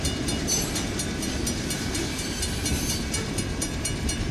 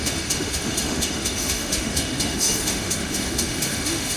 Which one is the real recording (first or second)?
first